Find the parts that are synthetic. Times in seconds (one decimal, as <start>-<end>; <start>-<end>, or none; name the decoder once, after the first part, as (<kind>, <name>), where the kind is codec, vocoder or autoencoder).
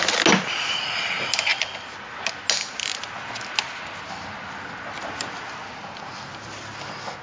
none